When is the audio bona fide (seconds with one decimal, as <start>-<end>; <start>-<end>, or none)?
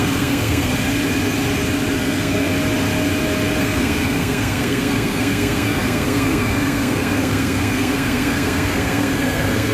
0.7-2.0; 2.5-3.6